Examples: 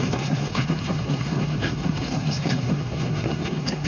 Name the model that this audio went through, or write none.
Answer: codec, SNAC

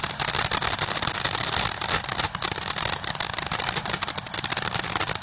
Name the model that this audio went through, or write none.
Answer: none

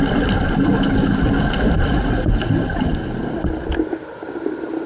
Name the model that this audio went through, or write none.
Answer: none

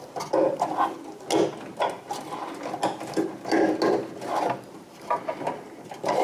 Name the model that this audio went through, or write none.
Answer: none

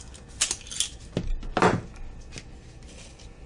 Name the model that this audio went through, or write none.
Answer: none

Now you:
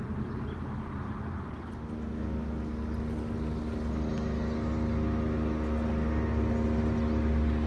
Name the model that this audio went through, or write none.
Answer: none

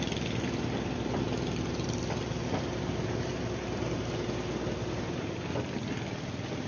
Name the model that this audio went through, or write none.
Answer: none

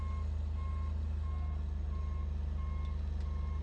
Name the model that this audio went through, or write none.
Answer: none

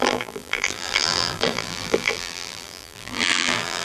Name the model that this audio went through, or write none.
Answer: vocoder, BigVGAN v2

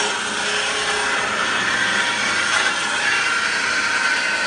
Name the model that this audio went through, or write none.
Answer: none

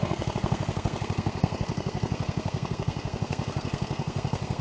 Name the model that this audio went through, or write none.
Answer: codec, SNAC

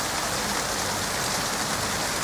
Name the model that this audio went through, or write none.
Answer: none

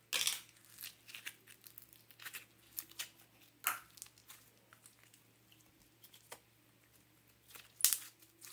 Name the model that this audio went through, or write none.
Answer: none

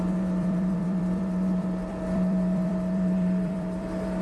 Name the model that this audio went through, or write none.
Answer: vocoder, BigVGAN v2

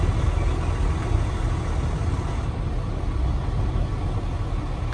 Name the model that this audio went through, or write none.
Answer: none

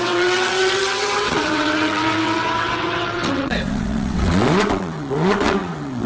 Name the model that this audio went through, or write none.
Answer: vocoder, WaveNeXt